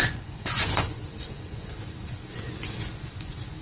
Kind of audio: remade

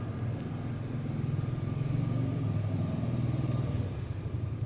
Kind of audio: recorded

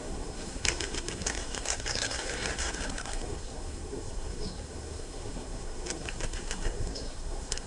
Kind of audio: remade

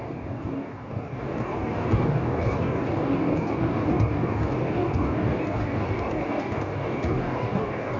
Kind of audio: remade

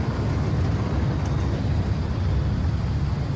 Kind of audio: recorded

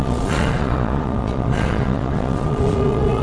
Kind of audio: remade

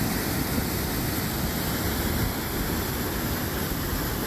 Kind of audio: recorded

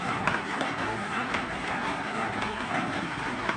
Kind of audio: remade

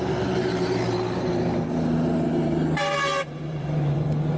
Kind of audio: remade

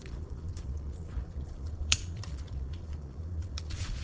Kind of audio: remade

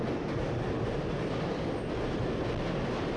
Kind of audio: recorded